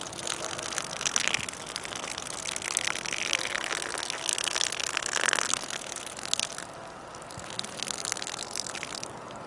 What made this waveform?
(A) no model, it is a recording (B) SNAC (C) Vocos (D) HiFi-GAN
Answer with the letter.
A